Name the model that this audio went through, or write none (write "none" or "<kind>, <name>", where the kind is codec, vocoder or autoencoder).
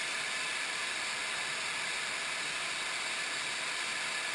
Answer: none